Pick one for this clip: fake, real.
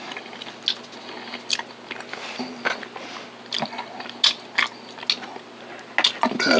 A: real